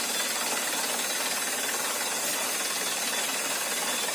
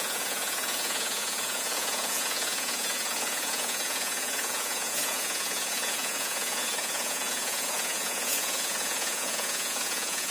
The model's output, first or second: second